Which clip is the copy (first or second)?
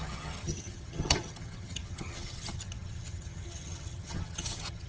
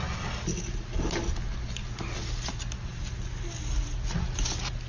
first